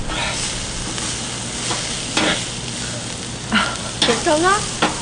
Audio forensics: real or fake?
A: real